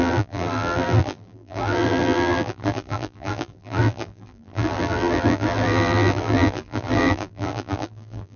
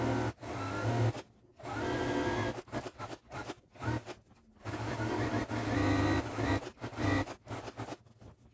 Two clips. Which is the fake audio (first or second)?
first